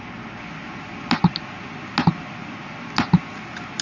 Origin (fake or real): real